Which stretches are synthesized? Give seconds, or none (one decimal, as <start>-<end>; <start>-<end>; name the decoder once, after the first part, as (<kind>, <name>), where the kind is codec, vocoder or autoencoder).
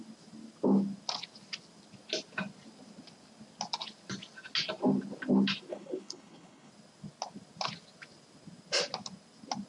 5.7-6.7 (codec, HILCodec)